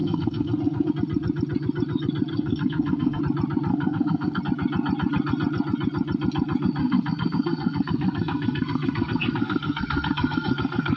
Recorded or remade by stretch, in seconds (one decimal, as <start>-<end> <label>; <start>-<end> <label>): 0.0-0.9 remade; 0.9-2.3 recorded; 2.3-3.2 remade; 3.2-3.7 recorded; 3.7-4.4 remade; 4.4-6.8 recorded; 6.8-11.0 remade